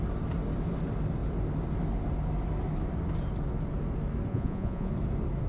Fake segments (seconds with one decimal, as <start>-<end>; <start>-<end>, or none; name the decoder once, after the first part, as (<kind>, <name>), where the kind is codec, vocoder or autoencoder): 4.3-4.9 (vocoder, Vocos)